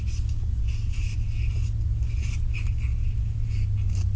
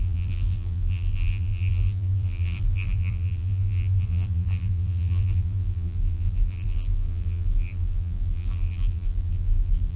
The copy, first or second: second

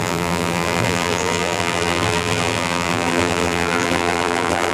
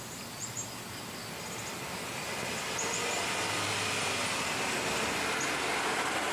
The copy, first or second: first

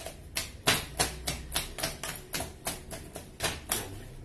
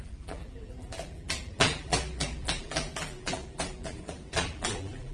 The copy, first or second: second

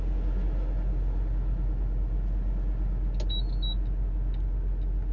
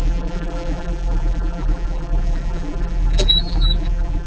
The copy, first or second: second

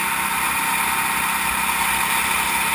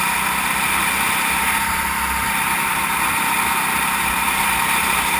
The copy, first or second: second